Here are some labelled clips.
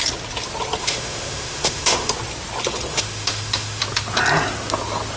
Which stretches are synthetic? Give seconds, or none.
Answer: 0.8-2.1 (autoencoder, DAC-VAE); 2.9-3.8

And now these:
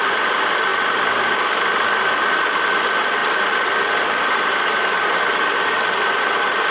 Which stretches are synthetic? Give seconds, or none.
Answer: none

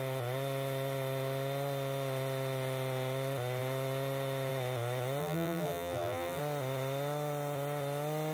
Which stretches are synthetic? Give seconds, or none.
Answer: 5.2-6.4 (vocoder, BigVGAN v2)